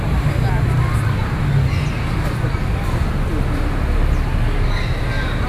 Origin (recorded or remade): recorded